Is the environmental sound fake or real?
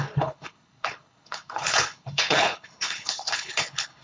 fake